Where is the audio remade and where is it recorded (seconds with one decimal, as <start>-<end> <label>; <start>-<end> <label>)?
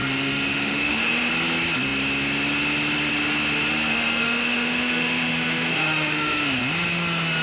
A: 0.0-1.3 remade; 1.3-3.9 recorded; 3.9-6.6 remade; 6.6-7.4 recorded